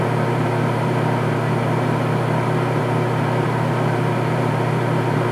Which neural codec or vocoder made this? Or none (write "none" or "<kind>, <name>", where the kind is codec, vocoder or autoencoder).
vocoder, BigVGAN v2